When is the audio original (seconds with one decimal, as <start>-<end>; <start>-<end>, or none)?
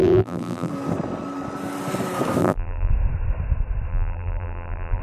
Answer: 0.7-2.4; 2.9-3.9